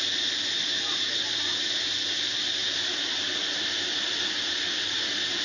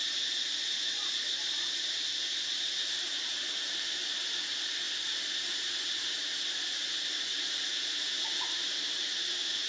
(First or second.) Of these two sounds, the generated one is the second